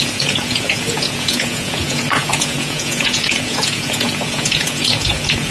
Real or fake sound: fake